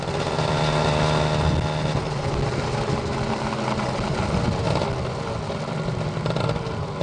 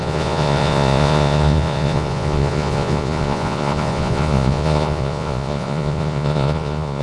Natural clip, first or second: first